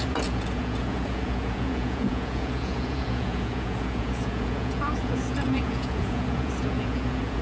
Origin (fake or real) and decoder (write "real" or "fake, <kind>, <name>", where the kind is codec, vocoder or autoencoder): fake, vocoder, Vocos